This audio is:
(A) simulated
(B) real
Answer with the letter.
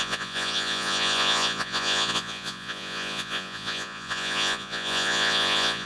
A